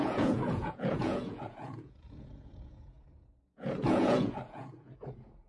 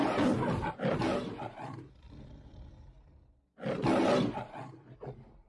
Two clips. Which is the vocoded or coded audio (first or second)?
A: first